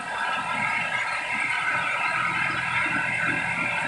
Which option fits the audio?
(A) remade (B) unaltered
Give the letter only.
B